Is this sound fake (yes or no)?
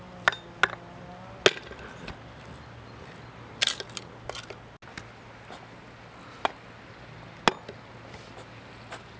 no